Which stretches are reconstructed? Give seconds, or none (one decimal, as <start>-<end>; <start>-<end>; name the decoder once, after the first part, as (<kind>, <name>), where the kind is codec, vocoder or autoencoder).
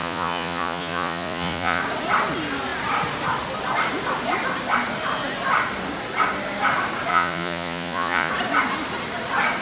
0.0-1.8 (vocoder, Vocos); 7.1-8.3